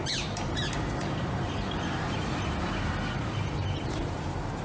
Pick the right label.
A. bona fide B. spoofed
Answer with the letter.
B